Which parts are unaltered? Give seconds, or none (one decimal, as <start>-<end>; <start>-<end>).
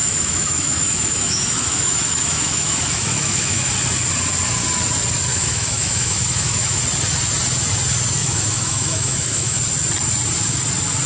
3.7-5.3; 6.8-8.2; 9.6-11.1